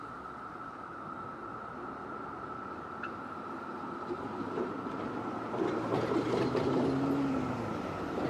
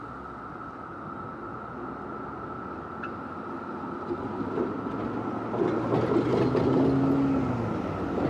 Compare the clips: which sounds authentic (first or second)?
second